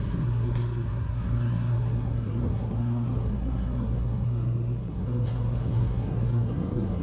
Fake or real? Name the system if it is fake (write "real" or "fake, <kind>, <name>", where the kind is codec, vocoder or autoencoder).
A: fake, codec, SNAC